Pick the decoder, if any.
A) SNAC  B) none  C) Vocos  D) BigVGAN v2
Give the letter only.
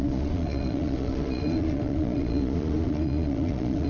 C